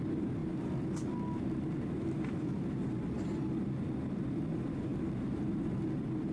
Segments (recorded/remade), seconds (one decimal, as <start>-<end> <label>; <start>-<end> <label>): 0.0-0.4 remade; 0.4-4.2 recorded; 4.2-4.9 remade; 4.9-5.6 recorded; 5.6-6.3 remade